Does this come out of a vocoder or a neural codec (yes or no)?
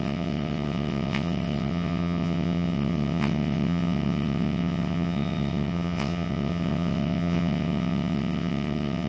yes